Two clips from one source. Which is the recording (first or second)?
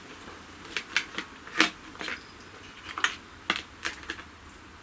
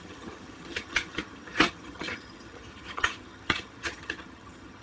first